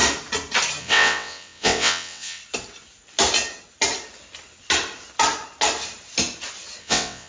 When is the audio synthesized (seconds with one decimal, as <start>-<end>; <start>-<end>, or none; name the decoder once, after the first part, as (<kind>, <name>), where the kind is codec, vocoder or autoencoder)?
0.8-2.4 (vocoder, WaveNeXt); 6.8-7.3